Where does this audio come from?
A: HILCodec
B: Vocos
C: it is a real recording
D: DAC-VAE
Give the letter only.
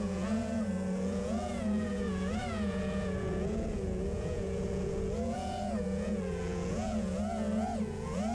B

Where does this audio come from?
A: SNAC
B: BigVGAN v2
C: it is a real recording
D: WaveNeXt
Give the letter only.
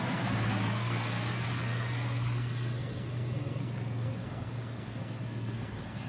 A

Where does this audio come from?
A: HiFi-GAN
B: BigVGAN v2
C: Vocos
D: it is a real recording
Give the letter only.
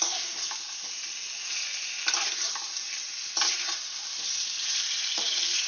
D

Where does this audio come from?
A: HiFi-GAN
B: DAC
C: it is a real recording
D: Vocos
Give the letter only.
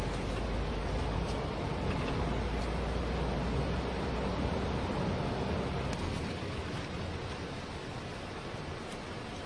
C